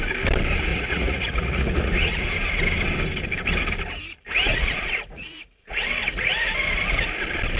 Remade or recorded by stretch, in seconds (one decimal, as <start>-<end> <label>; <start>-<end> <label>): 0.0-0.7 recorded; 0.7-2.2 remade; 2.2-4.5 recorded; 4.5-5.9 remade; 5.9-7.6 recorded